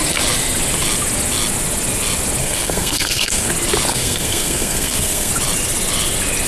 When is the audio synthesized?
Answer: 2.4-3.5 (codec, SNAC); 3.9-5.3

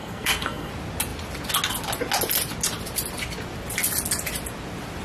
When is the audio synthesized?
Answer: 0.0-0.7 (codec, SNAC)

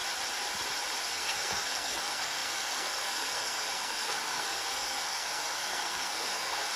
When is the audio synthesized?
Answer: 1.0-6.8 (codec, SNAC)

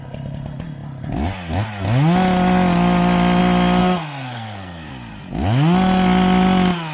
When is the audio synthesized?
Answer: 3.8-4.9 (codec, SNAC)

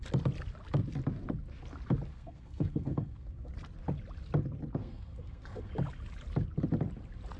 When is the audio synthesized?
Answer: 2.1-3.5 (codec, SNAC); 4.8-5.7